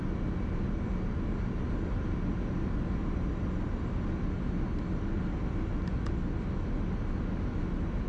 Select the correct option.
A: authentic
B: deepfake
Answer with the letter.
A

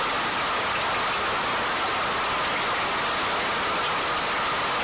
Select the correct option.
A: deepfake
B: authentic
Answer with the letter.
B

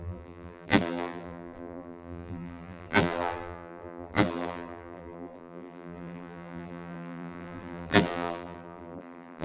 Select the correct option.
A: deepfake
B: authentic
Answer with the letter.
A